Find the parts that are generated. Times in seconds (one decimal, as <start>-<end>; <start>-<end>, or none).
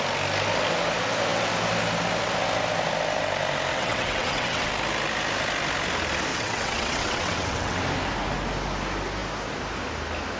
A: 3.7-4.7; 6.3-7.8